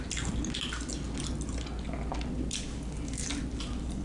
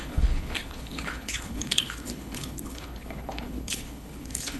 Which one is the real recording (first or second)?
first